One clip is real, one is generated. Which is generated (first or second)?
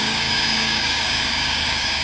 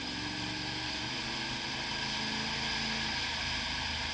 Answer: first